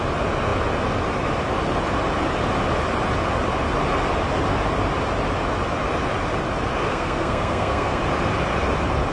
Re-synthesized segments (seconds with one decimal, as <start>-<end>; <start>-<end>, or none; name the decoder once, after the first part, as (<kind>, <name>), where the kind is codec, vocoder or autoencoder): 6.9-8.0 (codec, SNAC)

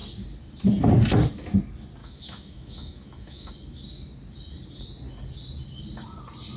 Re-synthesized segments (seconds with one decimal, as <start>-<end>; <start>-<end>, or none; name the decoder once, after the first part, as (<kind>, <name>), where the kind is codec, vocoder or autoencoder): 2.0-3.5 (autoencoder, DAC-VAE)